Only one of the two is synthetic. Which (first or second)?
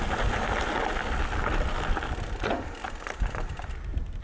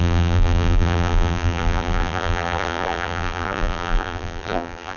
second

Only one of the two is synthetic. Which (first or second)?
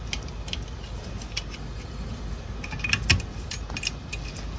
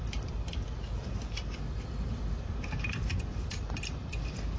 second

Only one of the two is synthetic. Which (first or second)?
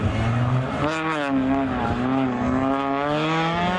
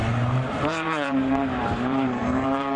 second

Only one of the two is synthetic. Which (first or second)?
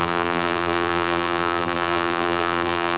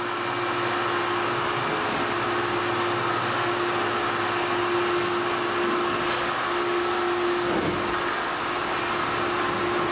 first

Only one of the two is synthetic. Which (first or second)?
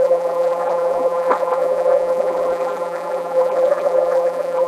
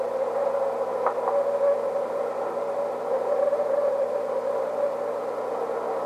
first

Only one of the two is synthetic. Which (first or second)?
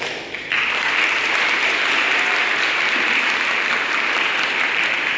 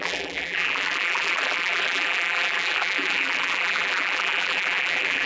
second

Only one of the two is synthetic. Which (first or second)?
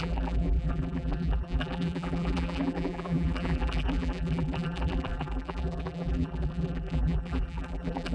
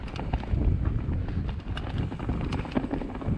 first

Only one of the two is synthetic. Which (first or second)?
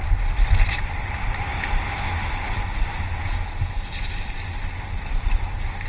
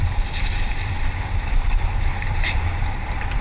second